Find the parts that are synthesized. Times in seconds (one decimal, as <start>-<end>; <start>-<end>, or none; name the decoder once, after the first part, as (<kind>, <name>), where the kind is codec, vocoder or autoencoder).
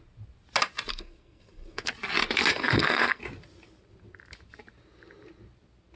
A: 0.9-1.9 (codec, SNAC); 2.5-3.2